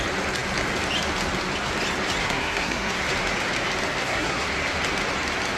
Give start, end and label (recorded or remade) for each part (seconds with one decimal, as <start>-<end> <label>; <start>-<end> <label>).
0.0-2.2 recorded; 2.2-3.0 remade; 3.0-4.0 recorded; 4.0-4.5 remade; 4.5-5.6 recorded